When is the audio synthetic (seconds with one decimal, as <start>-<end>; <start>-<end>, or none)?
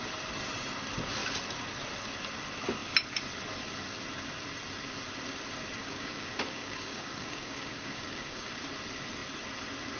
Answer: 5.8-8.5